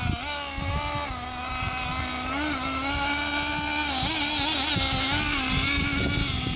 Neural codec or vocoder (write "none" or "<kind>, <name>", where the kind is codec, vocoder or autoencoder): none